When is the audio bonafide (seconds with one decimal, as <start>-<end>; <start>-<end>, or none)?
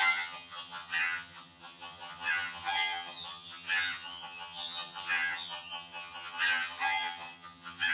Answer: none